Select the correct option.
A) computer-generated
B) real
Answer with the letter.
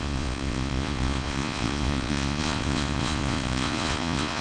A